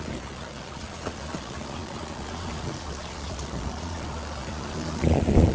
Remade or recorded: remade